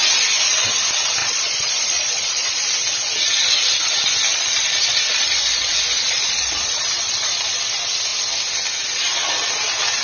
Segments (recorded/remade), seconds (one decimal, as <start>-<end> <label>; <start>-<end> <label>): 0.0-1.2 recorded; 1.2-2.6 remade; 2.6-4.3 recorded; 4.3-7.6 remade; 7.6-10.0 recorded